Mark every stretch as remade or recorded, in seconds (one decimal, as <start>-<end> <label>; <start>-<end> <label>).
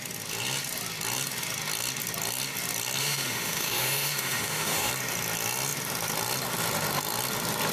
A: 0.0-3.0 recorded; 3.0-4.9 remade; 4.9-7.7 recorded